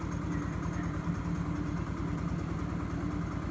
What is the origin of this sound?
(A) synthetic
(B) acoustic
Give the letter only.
B